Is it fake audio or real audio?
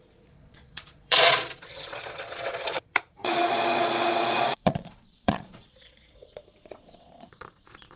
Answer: fake